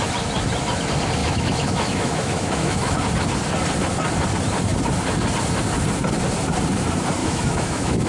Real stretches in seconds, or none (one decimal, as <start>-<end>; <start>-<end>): 0.0-1.2; 3.1-7.2